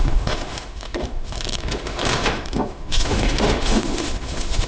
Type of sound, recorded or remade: remade